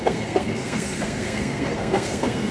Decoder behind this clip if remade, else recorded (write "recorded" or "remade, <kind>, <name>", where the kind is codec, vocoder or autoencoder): remade, codec, SNAC